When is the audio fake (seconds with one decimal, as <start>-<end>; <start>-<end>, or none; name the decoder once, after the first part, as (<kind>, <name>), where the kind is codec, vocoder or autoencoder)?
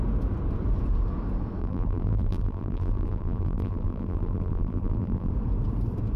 1.6-5.3 (vocoder, BigVGAN v2)